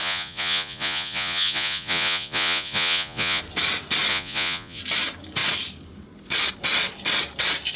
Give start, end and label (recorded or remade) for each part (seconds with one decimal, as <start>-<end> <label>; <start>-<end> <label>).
0.0-3.4 remade; 3.4-4.1 recorded; 4.1-4.8 remade; 4.8-7.8 recorded

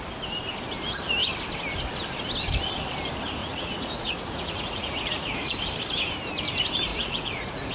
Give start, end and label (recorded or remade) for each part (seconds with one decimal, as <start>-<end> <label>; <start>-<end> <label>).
0.0-3.4 recorded; 3.4-5.6 remade; 5.6-6.9 recorded; 6.9-7.7 remade

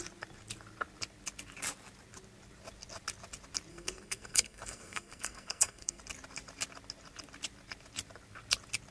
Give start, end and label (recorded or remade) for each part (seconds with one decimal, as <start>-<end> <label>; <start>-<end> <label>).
0.0-3.7 recorded; 3.7-6.0 remade; 6.0-8.9 recorded

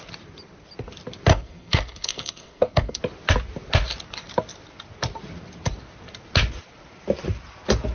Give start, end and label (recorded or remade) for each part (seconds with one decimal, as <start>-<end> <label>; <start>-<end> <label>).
0.0-1.3 recorded; 1.3-3.0 remade; 3.0-7.9 recorded

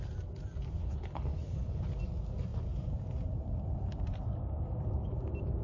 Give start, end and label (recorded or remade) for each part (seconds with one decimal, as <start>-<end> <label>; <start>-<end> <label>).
0.0-0.8 recorded; 0.8-1.9 remade; 1.9-5.6 recorded